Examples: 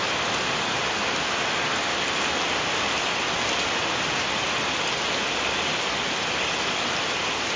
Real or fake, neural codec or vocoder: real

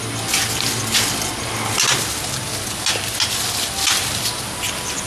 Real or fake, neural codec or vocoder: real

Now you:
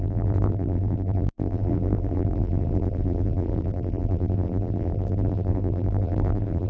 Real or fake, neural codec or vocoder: fake, vocoder, BigVGAN v2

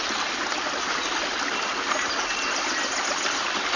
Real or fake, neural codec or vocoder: real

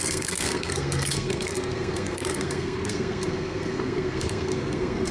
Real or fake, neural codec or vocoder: fake, codec, SNAC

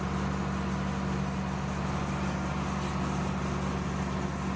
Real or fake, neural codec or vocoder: real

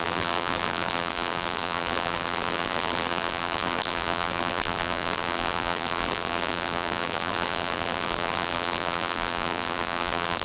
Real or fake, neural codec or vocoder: fake, vocoder, BigVGAN v2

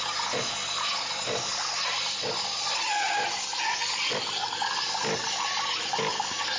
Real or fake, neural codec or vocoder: real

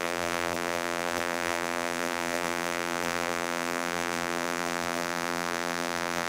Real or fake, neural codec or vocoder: fake, vocoder, BigVGAN v2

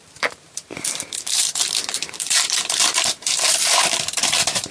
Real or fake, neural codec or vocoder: fake, vocoder, BigVGAN v2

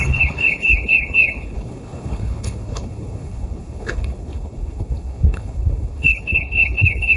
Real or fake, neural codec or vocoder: fake, codec, HILCodec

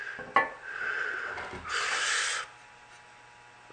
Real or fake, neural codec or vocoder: real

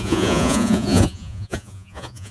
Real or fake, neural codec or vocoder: fake, vocoder, Vocos